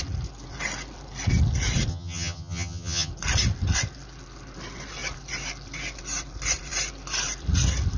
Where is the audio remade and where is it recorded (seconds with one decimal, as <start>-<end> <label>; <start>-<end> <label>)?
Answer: 0.0-1.9 recorded; 1.9-3.1 remade; 3.1-8.0 recorded